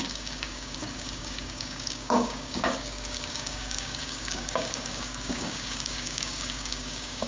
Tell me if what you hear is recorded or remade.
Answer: remade